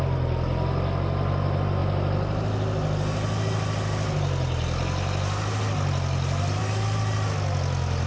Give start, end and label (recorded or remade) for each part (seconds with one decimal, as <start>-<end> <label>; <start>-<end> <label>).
0.0-8.1 recorded